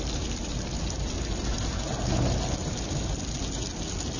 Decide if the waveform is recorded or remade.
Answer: recorded